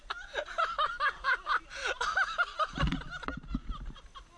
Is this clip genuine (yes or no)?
yes